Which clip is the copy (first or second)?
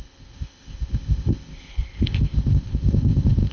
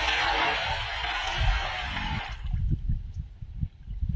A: first